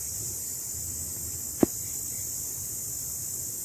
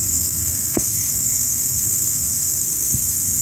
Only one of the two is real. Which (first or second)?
first